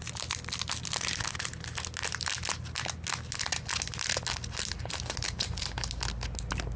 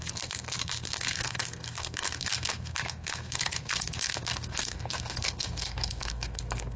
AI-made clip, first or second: second